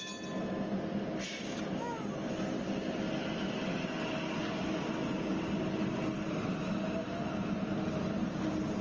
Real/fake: real